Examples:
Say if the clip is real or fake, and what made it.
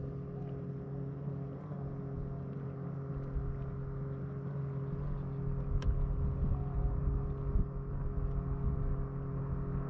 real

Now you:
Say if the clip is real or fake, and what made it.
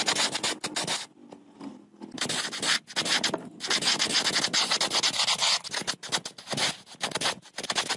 real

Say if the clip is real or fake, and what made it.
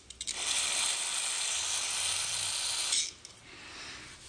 real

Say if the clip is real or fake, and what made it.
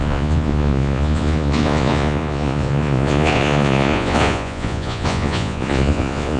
fake, vocoder, Vocos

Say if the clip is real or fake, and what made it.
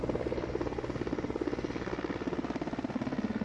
real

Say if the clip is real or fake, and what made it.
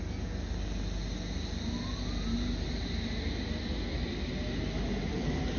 real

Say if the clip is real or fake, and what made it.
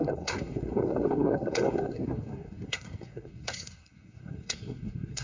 fake, codec, SNAC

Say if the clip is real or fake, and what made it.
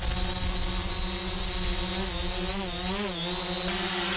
real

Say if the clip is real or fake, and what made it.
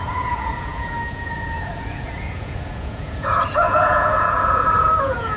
fake, vocoder, Vocos